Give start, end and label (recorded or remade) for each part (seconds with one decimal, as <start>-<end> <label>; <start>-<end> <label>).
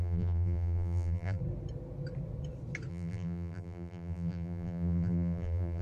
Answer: 0.0-1.4 remade; 1.4-2.9 recorded; 2.9-5.8 remade